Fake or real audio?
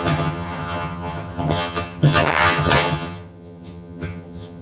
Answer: fake